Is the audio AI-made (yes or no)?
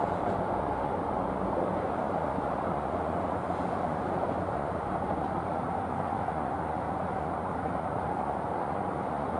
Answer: yes